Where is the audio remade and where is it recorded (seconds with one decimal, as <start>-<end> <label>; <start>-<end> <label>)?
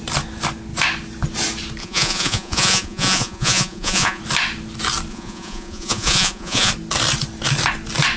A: 0.0-1.8 recorded; 1.8-4.2 remade; 4.2-5.1 recorded; 5.1-6.7 remade; 6.7-8.2 recorded